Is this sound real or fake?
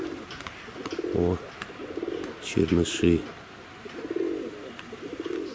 real